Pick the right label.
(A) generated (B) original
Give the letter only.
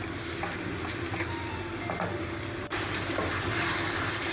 B